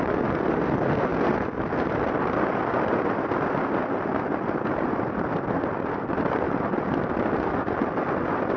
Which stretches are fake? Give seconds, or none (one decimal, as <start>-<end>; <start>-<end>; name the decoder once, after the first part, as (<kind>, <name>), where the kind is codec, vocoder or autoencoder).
none

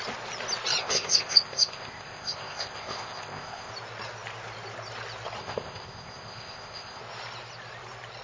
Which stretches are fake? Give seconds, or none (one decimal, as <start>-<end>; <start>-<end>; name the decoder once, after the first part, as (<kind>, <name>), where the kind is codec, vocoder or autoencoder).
0.8-3.7 (codec, ZipCodec); 5.4-7.0

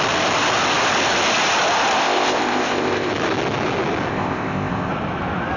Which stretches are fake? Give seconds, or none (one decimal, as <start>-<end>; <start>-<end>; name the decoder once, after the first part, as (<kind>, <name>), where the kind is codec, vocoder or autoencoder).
2.0-3.1 (codec, ZipCodec); 4.1-4.9